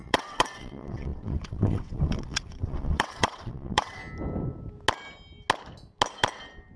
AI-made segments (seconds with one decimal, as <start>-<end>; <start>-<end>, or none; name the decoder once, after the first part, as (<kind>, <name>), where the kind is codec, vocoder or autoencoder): 0.0-4.0 (vocoder, WaveNeXt)